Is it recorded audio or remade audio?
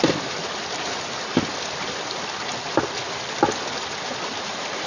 recorded